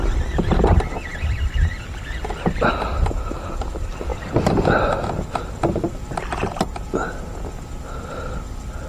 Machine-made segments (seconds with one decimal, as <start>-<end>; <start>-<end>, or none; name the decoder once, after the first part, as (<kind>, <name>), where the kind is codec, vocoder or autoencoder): none